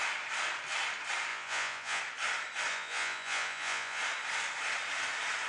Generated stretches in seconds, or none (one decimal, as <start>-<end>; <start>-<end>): 1.3-2.0; 2.7-4.0